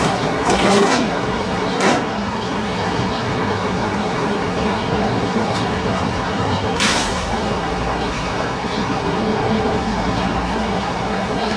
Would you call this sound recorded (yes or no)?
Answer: no